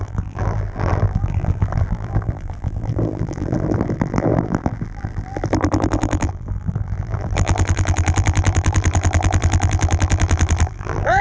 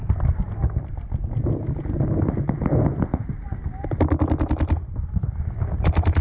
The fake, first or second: first